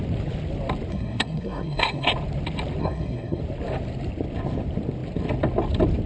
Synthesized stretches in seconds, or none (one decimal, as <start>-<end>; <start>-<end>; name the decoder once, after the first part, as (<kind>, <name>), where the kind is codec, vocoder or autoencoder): 0.9-2.1 (codec, SNAC); 2.8-3.4